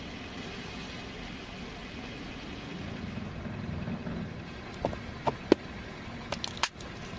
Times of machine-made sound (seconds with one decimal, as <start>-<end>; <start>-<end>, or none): 1.8-2.9